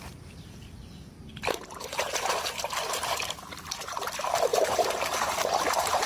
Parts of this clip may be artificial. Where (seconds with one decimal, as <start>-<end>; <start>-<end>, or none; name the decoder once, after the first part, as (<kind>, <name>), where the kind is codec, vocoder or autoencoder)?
1.3-2.4 (vocoder, BigVGAN v2); 4.5-6.1